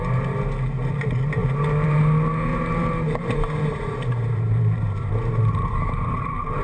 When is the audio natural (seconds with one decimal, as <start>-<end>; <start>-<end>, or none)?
0.0-1.4; 2.0-2.5

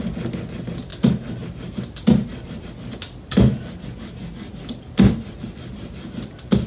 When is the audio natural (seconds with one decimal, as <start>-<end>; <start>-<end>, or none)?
0.0-0.9; 2.7-6.7

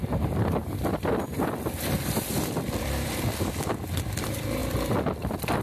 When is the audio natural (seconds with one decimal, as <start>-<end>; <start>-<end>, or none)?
4.6-5.6

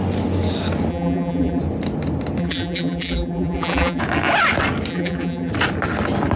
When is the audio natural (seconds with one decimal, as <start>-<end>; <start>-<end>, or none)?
0.0-0.9; 1.6-2.4; 4.0-4.9; 5.5-6.4

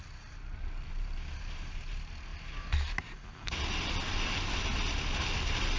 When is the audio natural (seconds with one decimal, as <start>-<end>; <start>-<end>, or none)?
0.0-5.8